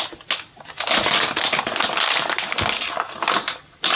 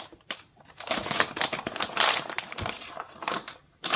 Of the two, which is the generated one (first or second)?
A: second